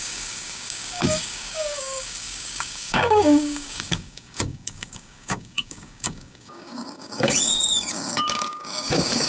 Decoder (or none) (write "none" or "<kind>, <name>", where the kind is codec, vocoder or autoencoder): codec, DAC